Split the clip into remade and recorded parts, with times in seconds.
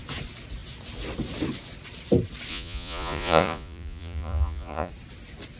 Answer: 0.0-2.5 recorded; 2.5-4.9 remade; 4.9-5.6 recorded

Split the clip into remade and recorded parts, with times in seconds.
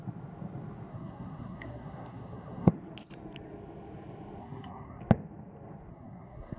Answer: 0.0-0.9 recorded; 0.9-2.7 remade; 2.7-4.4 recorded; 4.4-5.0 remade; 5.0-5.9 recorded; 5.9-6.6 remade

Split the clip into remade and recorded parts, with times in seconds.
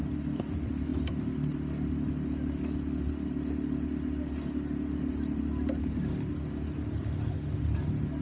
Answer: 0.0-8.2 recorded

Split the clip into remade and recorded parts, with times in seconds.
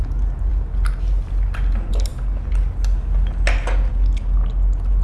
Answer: 0.0-5.0 recorded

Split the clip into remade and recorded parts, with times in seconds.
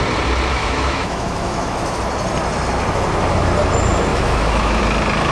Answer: 0.0-0.5 recorded; 0.5-2.0 remade; 2.0-4.1 recorded; 4.1-4.8 remade; 4.8-5.3 recorded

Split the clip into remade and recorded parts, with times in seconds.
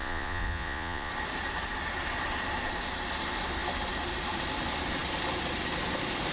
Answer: 0.0-1.1 remade; 1.1-6.3 recorded